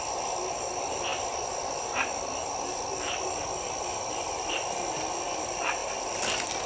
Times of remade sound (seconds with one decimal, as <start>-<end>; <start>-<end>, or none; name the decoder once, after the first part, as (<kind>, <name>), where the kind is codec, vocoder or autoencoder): none